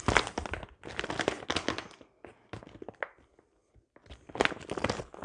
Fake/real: real